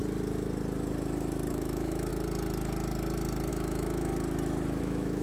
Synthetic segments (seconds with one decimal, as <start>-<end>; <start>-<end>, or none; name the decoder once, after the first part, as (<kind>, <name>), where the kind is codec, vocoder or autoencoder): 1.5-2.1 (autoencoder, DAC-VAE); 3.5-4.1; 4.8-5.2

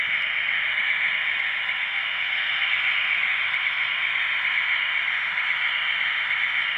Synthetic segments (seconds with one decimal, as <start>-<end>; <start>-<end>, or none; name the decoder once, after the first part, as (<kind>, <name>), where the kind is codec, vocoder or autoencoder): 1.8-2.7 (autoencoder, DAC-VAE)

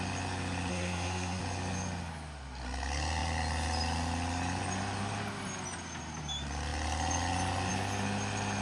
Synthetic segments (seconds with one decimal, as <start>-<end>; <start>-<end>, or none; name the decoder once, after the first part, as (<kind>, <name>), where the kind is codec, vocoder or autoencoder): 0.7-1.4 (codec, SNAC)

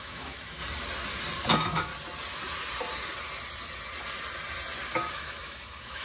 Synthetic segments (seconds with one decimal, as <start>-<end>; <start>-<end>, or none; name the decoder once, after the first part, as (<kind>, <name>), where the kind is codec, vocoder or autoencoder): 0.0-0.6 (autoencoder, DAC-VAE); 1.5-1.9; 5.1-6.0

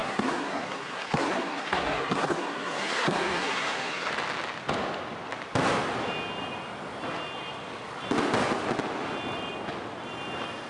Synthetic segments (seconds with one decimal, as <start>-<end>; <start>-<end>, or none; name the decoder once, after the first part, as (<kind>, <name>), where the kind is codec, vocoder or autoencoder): 0.0-4.1 (codec, SNAC)

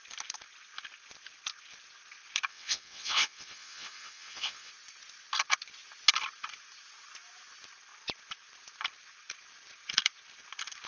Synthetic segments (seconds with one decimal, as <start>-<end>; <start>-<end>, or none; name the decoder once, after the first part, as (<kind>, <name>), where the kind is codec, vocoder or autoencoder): 2.5-4.7 (vocoder, WaveNeXt)

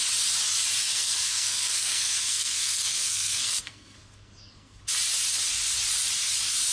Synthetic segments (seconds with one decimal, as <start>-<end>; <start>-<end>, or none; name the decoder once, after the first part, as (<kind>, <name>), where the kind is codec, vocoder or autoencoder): 0.8-4.8 (codec, SNAC)

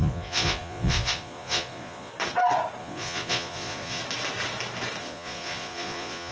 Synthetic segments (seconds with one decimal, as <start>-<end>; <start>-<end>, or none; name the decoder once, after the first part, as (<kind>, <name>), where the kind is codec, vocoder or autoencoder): 0.0-2.1 (vocoder, Vocos); 2.8-4.0; 5.0-6.3